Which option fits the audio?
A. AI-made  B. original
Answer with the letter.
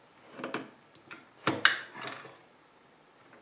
B